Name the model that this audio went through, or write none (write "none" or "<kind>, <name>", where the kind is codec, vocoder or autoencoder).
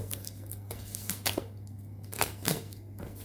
codec, SNAC